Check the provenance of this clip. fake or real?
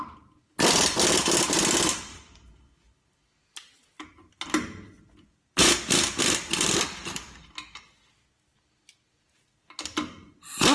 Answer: real